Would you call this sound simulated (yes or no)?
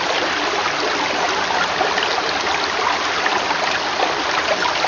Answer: no